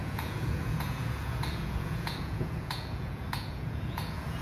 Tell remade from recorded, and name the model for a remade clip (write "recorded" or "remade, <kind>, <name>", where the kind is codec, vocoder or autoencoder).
remade, vocoder, Vocos